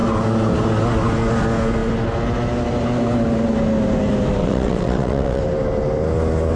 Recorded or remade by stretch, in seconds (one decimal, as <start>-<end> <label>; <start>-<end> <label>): 0.0-4.4 recorded; 4.4-5.4 remade; 5.4-6.6 recorded